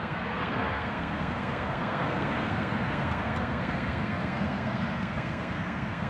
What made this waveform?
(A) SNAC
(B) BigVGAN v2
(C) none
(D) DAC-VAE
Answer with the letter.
A